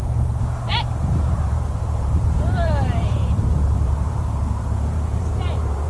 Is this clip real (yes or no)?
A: no